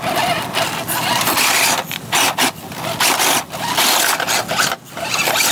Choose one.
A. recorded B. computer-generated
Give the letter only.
A